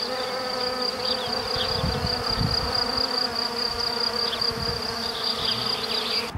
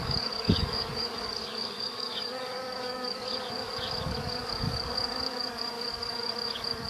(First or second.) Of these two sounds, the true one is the first